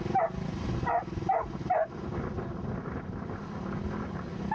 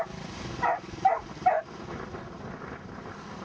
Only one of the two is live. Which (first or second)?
first